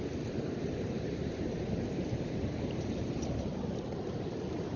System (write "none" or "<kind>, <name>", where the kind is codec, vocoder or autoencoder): vocoder, BigVGAN v2